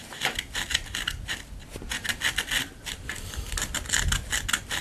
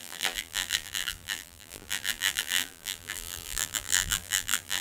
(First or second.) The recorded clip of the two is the first